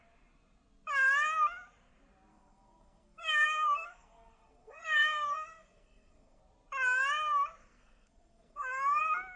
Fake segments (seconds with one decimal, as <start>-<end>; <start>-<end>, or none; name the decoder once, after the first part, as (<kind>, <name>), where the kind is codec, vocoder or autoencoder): 2.3-6.4 (codec, SNAC); 7.6-9.0